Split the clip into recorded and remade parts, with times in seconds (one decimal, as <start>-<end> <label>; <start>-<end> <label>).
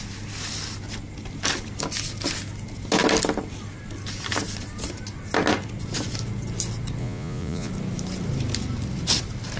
0.0-7.0 recorded; 7.0-7.7 remade; 7.7-9.6 recorded